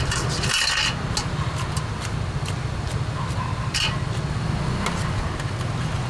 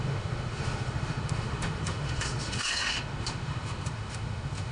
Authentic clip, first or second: first